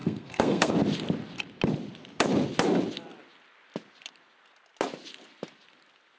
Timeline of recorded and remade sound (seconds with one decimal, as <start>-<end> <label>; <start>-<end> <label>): 0.0-0.7 remade; 0.7-6.2 recorded